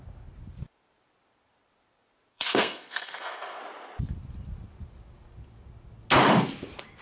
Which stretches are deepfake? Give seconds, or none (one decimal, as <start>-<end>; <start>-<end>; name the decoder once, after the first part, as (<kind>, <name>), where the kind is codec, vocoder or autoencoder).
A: 2.3-3.6 (codec, SNAC)